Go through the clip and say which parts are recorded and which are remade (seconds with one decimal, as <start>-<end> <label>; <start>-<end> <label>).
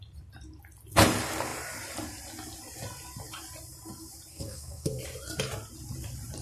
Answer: 0.0-4.3 recorded; 4.3-5.0 remade; 5.0-6.4 recorded